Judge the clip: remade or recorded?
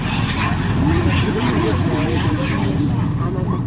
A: recorded